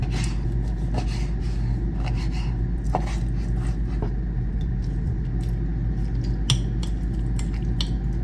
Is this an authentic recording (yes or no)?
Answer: yes